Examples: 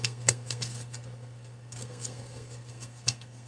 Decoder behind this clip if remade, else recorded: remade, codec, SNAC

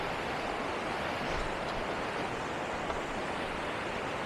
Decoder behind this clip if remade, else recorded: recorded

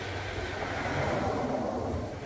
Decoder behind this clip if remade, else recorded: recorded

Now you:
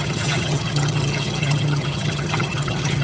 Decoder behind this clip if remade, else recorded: remade, vocoder, HiFi-GAN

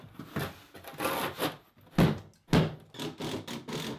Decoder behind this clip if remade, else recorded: recorded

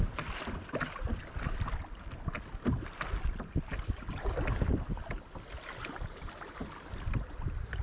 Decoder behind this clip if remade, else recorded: recorded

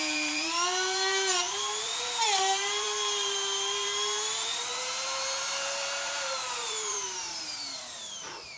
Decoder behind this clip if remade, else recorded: remade, vocoder, BigVGAN v2